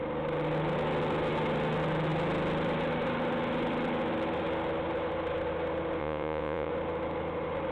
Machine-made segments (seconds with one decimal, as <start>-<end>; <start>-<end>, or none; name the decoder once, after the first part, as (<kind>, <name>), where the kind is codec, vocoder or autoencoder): 6.0-6.7 (vocoder, Vocos)